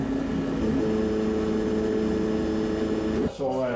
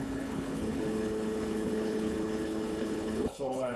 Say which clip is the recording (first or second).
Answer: first